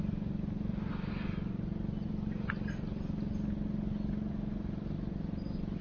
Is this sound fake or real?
real